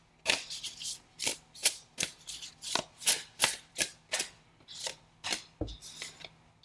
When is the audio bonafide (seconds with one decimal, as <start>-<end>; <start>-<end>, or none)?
0.0-6.6